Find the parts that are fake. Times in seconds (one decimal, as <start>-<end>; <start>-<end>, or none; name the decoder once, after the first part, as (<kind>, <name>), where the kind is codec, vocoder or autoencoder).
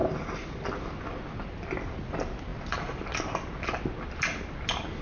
none